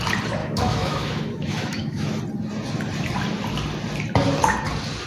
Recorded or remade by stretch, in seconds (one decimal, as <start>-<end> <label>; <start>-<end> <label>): 0.0-0.4 recorded; 0.4-2.2 remade; 2.2-5.1 recorded